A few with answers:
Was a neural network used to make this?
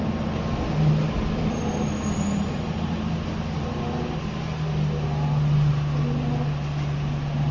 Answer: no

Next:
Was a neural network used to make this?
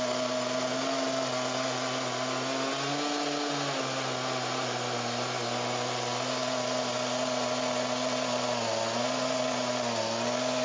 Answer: no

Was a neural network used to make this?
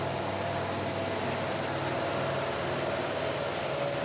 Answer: no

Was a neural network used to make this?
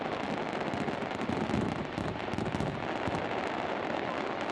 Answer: no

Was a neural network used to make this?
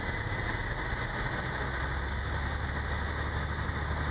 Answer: no